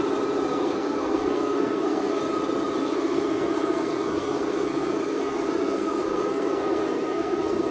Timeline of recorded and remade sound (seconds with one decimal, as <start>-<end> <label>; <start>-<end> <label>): 0.0-0.5 recorded; 0.5-2.2 remade; 2.2-2.8 recorded; 2.8-7.7 remade